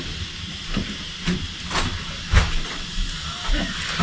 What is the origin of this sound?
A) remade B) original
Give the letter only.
B